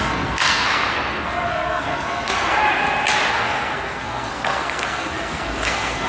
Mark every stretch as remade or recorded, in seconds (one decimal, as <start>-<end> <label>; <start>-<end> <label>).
0.0-2.6 remade; 2.6-3.3 recorded; 3.3-6.1 remade